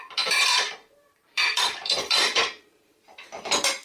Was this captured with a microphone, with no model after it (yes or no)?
no